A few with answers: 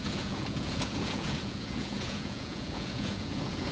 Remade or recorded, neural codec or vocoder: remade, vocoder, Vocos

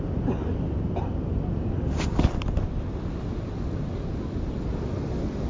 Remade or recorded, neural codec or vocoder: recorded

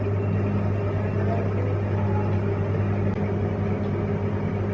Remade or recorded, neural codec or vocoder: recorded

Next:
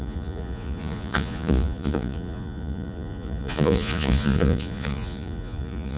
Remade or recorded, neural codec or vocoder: remade, vocoder, Vocos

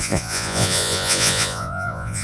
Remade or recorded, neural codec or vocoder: remade, vocoder, Vocos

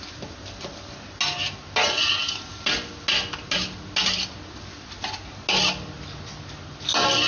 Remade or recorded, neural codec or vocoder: recorded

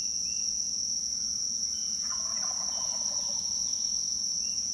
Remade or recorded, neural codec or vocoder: remade, vocoder, Vocos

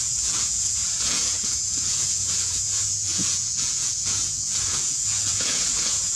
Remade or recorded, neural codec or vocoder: remade, vocoder, Vocos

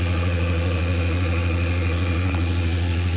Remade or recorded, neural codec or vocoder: remade, vocoder, Vocos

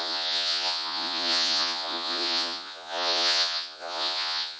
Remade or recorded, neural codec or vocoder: remade, vocoder, Vocos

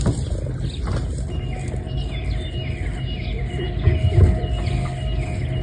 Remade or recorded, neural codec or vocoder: recorded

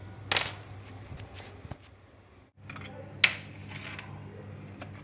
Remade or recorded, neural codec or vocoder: recorded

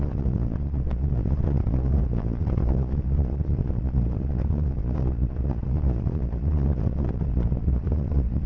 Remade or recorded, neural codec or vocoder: remade, vocoder, Vocos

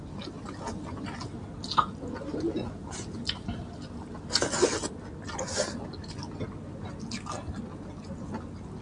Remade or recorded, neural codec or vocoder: recorded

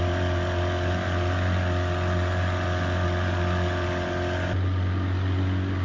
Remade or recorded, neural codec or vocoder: recorded